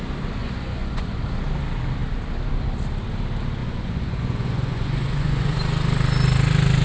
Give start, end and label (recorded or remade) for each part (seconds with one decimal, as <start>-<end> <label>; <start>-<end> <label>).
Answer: 0.0-0.4 recorded; 0.4-1.2 remade; 1.2-3.6 recorded; 3.6-5.6 remade; 5.6-6.8 recorded